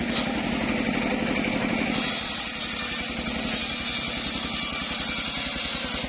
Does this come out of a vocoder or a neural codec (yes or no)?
no